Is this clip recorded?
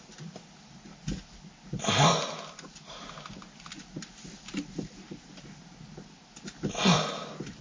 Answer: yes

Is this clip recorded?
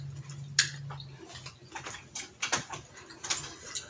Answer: yes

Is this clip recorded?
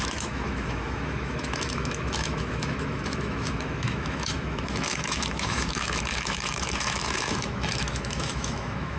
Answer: no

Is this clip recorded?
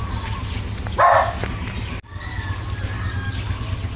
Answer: yes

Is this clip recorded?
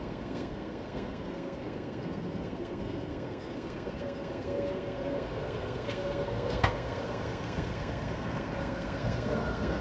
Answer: no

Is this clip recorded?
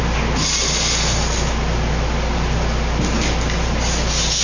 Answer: yes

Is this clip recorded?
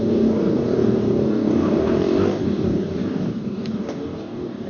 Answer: no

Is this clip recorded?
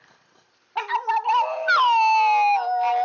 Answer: yes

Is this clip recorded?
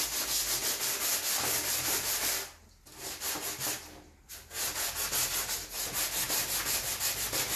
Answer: yes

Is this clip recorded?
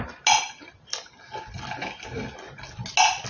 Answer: yes